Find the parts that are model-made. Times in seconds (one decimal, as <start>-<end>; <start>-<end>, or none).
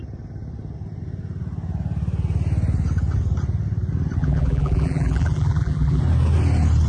4.2-6.0